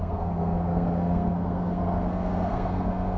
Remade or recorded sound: remade